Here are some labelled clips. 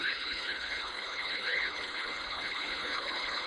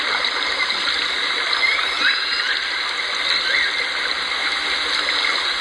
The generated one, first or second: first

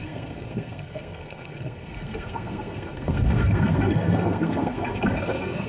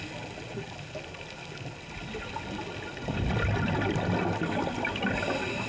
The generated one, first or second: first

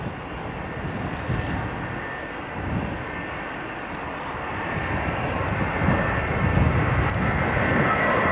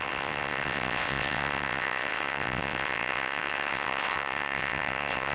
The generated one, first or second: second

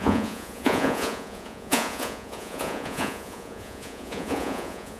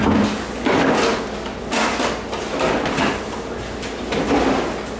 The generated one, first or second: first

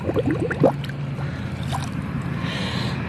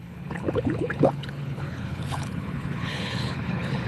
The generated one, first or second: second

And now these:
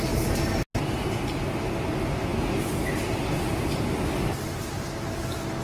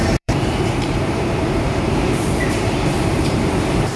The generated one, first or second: second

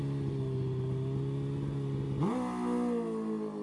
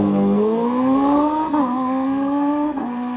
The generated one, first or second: second